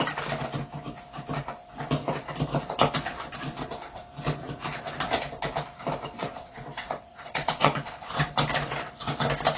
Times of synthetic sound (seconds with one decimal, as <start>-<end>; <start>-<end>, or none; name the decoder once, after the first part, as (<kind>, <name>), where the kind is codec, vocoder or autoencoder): 6.2-8.3 (vocoder, WaveNeXt)